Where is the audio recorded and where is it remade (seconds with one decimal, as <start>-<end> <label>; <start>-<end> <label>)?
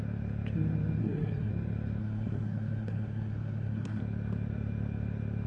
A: 0.0-1.0 recorded; 1.0-1.5 remade; 1.5-2.0 recorded; 2.0-4.0 remade; 4.0-5.5 recorded